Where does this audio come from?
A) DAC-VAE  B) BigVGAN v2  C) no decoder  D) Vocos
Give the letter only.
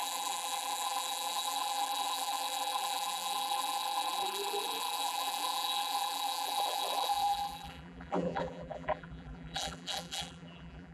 B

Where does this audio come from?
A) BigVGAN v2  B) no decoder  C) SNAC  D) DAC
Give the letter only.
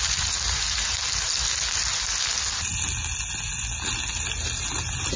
B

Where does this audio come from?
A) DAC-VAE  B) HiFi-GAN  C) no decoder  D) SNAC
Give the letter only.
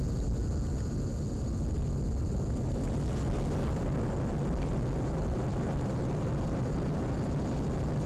C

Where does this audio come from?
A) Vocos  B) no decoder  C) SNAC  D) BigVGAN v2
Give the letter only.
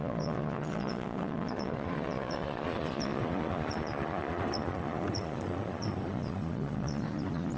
A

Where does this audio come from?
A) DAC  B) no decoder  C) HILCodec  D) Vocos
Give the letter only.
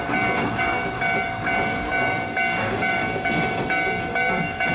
A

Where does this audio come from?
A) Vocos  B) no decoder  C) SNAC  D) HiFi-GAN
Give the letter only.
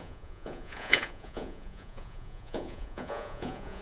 A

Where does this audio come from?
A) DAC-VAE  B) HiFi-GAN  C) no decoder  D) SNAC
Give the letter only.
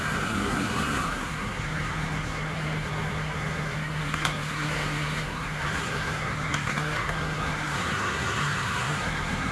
D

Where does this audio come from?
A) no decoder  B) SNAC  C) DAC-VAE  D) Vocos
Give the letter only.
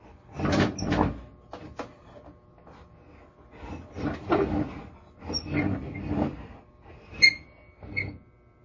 A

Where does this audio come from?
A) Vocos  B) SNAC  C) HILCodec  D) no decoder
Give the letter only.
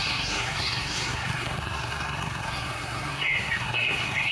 B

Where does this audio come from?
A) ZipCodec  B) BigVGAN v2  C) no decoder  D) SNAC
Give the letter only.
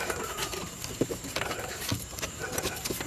B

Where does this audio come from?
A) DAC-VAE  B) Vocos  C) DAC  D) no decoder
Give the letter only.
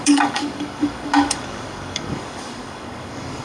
C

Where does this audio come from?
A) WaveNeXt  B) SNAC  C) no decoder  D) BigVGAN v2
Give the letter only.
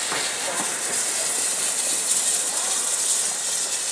C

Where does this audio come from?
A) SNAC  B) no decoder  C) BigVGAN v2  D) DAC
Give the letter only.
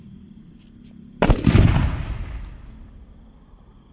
C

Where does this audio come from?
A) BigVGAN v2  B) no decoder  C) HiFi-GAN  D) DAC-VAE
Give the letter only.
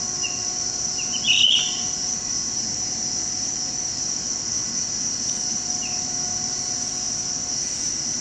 A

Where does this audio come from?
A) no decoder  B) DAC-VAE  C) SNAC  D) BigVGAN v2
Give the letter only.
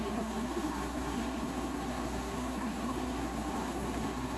C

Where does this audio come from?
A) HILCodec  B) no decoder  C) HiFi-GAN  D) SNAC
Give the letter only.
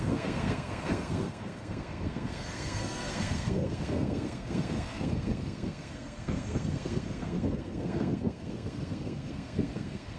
D